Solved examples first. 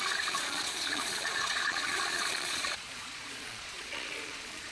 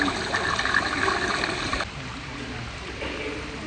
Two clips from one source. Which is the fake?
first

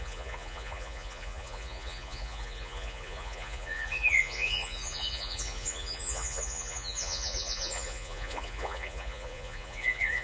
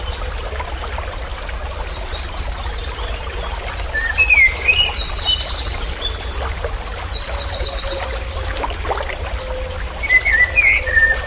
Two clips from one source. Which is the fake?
first